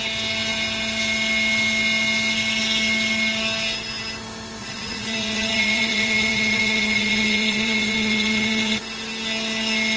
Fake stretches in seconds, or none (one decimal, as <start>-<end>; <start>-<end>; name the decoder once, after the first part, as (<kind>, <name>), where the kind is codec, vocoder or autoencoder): 4.6-8.8 (vocoder, Vocos)